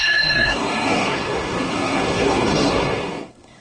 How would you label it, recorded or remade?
remade